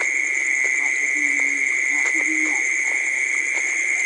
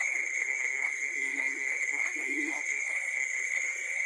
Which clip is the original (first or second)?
first